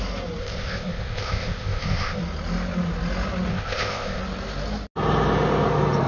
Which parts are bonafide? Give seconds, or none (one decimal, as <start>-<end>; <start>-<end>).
0.0-0.4; 2.2-3.5; 4.2-6.1